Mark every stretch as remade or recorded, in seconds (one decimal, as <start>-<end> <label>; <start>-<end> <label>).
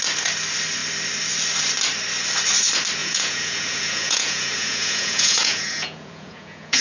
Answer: 0.0-3.0 recorded; 3.0-6.8 remade